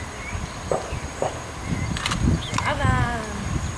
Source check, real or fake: real